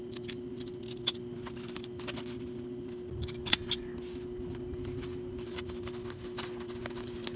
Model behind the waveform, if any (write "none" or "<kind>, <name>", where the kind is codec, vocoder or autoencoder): none